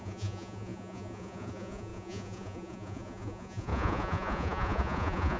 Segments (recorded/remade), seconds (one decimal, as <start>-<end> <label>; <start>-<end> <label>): 0.0-5.4 remade